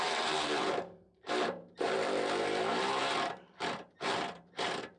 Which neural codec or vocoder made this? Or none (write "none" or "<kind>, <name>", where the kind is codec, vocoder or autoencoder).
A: vocoder, BigVGAN v2